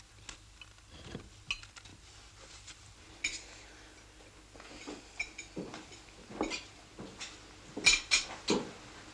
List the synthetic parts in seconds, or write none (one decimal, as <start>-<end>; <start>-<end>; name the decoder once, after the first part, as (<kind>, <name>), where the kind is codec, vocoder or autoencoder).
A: none